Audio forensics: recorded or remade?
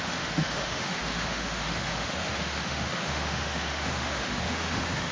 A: remade